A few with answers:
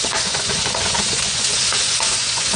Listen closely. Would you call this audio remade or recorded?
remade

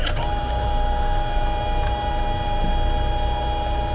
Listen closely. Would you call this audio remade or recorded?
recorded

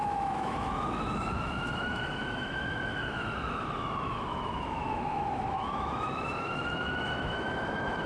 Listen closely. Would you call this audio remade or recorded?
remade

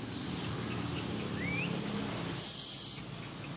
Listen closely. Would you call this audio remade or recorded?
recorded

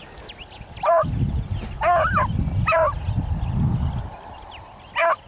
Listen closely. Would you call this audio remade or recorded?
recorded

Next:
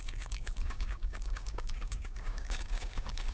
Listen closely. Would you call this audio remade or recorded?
remade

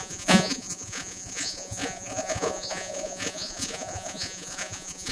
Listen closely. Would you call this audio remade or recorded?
remade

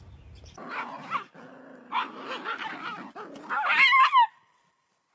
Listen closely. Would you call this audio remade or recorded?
recorded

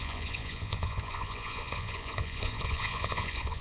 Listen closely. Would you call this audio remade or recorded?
remade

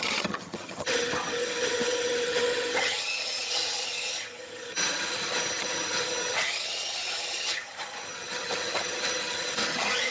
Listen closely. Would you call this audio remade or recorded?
remade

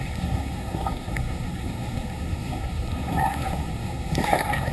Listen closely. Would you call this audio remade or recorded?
remade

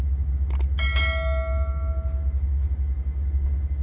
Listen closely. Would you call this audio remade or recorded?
recorded